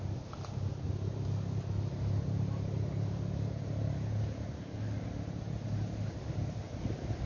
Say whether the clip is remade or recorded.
recorded